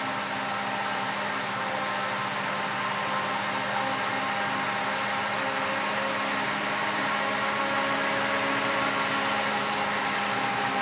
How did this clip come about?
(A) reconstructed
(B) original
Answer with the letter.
B